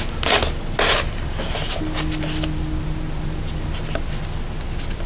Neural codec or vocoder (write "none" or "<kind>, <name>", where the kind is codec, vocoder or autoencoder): none